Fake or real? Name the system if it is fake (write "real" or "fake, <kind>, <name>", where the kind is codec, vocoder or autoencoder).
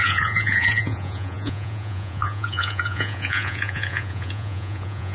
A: fake, vocoder, Vocos